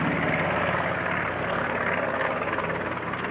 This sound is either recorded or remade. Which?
recorded